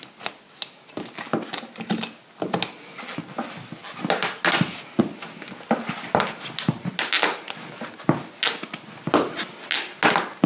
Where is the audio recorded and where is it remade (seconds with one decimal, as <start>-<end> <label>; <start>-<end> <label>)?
0.0-10.5 recorded